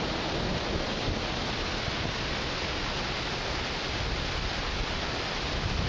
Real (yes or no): yes